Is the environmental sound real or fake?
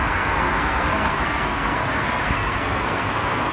fake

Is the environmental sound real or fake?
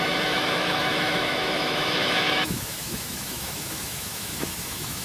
fake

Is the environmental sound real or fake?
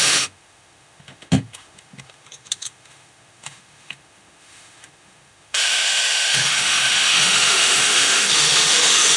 fake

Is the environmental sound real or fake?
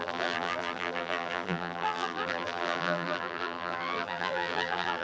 fake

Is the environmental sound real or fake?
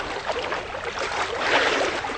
real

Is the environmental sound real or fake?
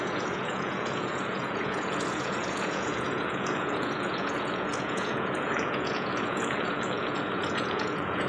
fake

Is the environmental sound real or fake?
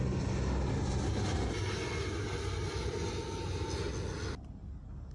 real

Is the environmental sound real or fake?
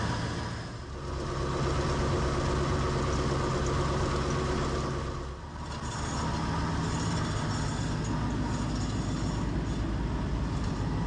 real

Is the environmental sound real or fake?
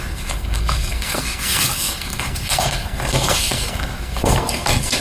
fake